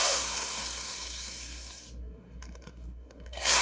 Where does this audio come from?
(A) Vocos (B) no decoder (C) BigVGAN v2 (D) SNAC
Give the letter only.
D